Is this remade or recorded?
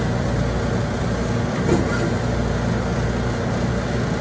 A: recorded